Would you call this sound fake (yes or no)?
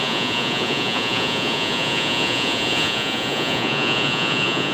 yes